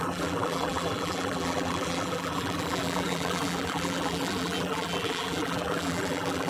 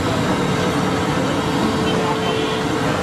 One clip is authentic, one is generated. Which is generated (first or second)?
first